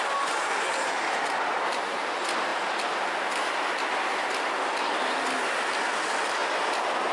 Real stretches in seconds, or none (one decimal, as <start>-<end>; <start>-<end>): 0.0-7.1